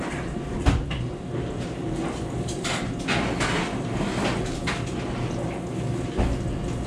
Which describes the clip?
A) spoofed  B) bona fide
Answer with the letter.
B